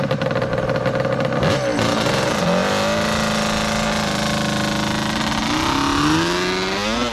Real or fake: real